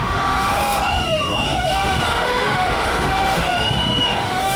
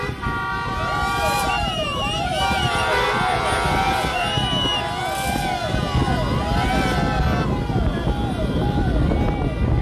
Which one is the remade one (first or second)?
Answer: first